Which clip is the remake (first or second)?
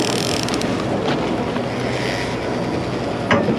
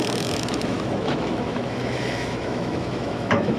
second